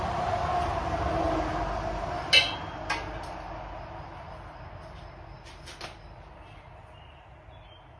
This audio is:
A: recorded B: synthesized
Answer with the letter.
A